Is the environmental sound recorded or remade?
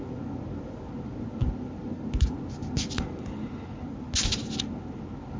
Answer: recorded